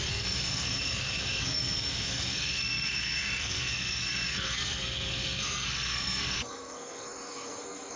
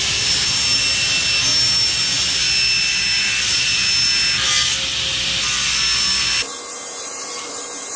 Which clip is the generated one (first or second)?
first